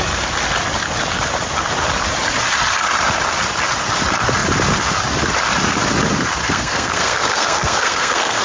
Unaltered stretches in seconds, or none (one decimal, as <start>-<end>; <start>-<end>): 0.0-6.4

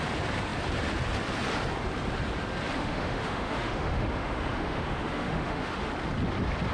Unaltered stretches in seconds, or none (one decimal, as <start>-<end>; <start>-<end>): 0.0-2.8; 5.9-6.7

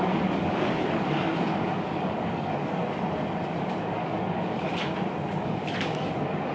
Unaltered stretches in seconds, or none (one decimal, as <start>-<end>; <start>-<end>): 2.8-3.6; 4.7-5.3

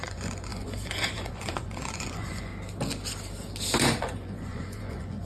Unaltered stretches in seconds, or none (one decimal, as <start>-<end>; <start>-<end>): 2.5-4.0

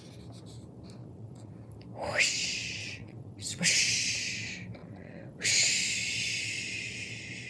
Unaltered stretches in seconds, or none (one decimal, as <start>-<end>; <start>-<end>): 0.0-1.0; 1.5-2.8; 3.8-4.8; 5.7-7.5

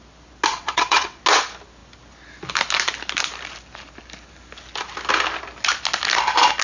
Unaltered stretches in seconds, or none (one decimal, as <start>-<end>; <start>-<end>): 0.0-0.5; 1.2-6.6